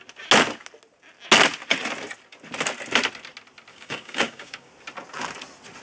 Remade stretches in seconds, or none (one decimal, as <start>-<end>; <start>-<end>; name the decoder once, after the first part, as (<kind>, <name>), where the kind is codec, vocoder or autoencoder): 3.7-4.7 (codec, DAC)